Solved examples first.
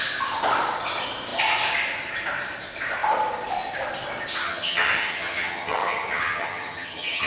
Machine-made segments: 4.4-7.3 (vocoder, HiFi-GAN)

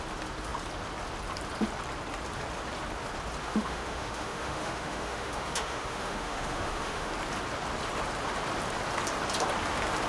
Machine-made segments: 3.4-7.1 (autoencoder, DAC-VAE)

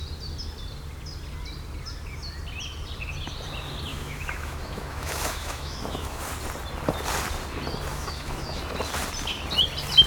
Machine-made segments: 3.9-6.3 (autoencoder, DAC-VAE); 7.9-8.6